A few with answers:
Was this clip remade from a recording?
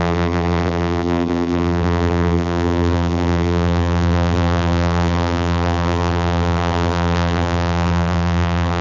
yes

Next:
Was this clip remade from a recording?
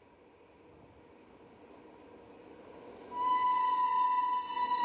no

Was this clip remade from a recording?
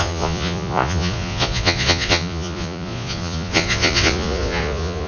yes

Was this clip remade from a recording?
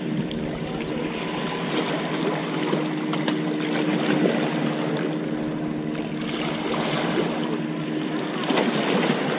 no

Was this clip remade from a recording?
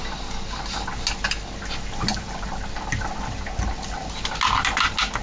no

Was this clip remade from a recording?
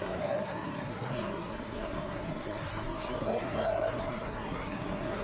yes